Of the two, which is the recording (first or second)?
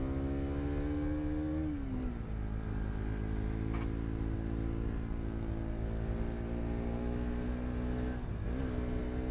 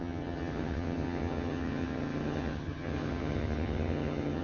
first